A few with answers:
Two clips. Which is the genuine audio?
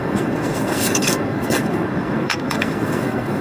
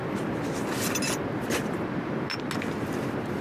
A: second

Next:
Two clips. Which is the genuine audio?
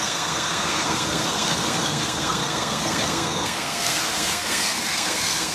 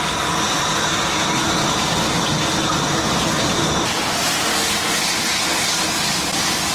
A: second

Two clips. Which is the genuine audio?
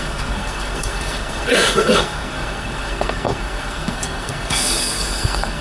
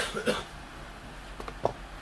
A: second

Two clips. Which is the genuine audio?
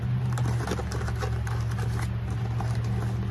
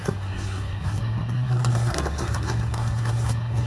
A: first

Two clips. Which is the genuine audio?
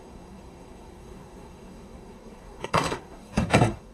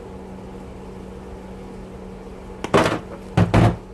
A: second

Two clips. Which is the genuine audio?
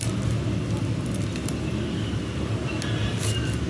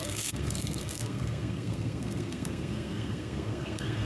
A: first